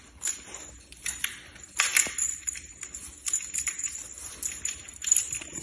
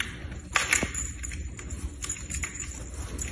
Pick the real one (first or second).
second